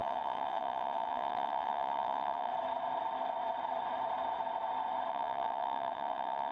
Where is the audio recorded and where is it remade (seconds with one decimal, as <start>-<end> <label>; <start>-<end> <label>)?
0.0-2.5 remade; 2.5-5.1 recorded; 5.1-6.5 remade